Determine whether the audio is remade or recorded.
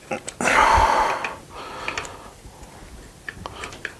recorded